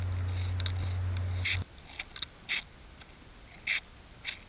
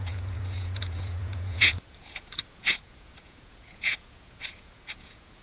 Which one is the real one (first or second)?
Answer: first